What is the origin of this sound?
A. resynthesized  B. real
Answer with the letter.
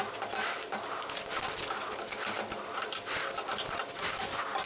B